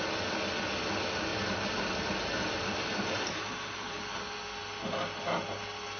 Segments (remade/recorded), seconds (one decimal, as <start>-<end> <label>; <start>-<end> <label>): 0.0-1.3 recorded; 1.3-4.0 remade; 4.0-6.0 recorded